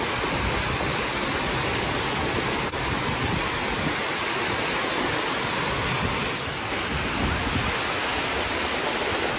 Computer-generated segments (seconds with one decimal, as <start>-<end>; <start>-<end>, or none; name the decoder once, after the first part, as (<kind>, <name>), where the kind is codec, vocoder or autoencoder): none